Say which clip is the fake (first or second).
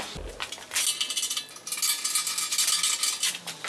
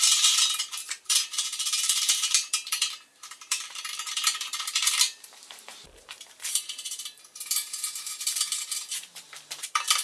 second